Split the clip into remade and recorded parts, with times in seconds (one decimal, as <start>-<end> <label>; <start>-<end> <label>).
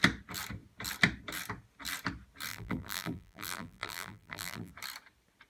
0.0-2.5 recorded; 2.5-4.7 remade; 4.7-5.5 recorded